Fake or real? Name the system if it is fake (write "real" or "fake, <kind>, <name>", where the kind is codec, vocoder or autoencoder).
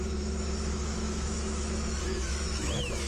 fake, autoencoder, DAC-VAE